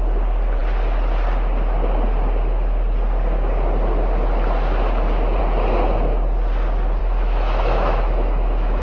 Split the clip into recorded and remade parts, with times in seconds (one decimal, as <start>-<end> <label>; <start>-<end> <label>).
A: 0.0-7.0 recorded; 7.0-8.8 remade